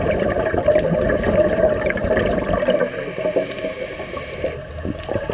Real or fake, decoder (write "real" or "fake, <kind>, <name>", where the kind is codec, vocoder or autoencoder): real